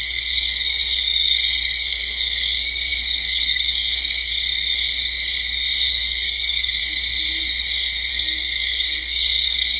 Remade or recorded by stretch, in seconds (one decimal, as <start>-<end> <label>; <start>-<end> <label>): 0.0-4.3 remade; 4.3-5.9 recorded; 5.9-6.8 remade; 6.8-8.1 recorded; 8.1-9.8 remade